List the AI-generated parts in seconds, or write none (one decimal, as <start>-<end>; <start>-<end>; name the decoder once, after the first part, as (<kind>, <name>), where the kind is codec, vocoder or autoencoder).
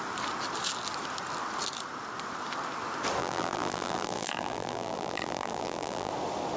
3.2-6.1 (vocoder, BigVGAN v2)